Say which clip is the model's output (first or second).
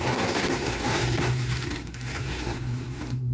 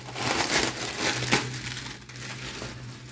first